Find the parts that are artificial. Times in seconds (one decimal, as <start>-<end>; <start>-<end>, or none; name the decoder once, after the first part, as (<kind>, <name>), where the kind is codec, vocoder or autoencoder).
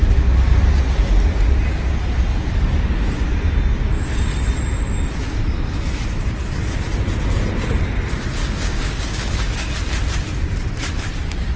8.4-9.7 (codec, DAC)